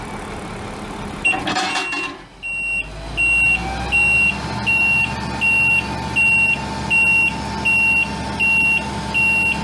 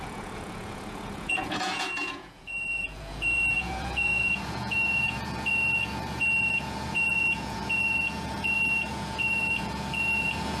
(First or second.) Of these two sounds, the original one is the first